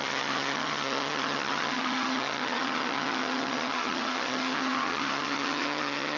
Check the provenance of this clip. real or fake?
fake